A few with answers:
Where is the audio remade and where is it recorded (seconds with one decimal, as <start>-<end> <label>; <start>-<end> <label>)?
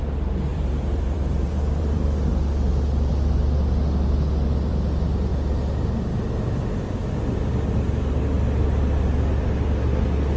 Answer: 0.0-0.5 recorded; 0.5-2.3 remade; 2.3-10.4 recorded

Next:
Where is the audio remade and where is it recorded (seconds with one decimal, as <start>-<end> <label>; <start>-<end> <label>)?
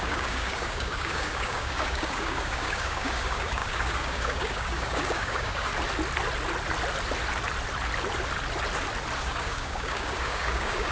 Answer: 0.0-5.7 remade; 5.7-9.2 recorded; 9.2-10.9 remade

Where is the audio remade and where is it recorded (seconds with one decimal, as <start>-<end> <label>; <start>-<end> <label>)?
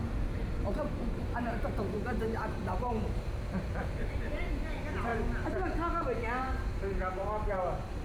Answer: 0.0-5.1 remade; 5.1-6.4 recorded; 6.4-8.0 remade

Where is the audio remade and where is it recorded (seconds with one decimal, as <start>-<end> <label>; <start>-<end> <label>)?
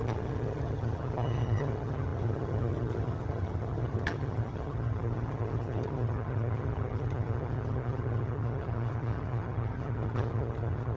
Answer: 0.0-11.0 remade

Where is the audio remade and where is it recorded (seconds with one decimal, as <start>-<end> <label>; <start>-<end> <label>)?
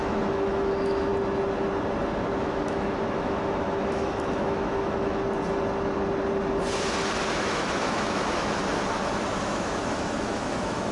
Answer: 0.0-1.1 remade; 1.1-2.4 recorded; 2.4-5.2 remade; 5.2-7.4 recorded; 7.4-8.6 remade; 8.6-9.4 recorded; 9.4-10.9 remade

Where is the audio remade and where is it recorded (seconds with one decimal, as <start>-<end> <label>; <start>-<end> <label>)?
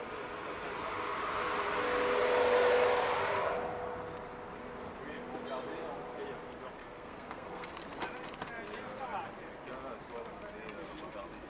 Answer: 0.0-6.8 recorded; 6.8-7.7 remade; 7.7-11.5 recorded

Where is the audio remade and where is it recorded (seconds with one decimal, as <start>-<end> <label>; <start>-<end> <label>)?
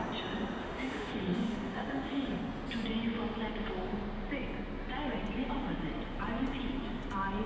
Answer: 0.0-0.6 recorded; 0.6-2.4 remade; 2.4-7.5 recorded